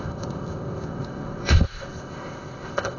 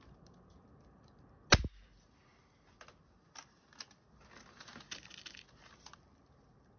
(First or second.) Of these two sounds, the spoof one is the first